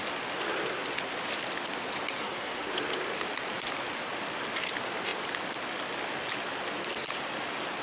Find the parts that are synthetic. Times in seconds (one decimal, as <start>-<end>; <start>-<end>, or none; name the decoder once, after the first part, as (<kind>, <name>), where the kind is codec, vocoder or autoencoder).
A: 2.2-2.7 (codec, SNAC)